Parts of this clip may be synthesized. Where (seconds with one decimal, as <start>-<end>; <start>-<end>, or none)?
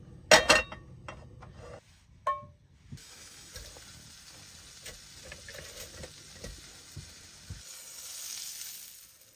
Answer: 3.0-3.5